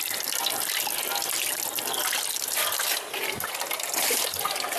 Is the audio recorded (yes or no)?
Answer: yes